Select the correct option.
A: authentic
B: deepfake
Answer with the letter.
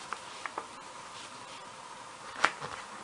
A